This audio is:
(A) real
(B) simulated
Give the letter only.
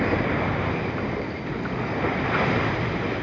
A